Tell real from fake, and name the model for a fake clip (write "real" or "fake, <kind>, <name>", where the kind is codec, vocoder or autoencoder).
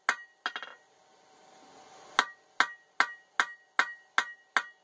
real